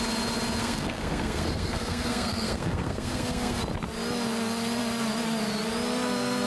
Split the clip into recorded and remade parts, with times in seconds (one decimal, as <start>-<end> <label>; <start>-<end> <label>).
0.0-0.6 recorded; 0.6-3.6 remade; 3.6-6.5 recorded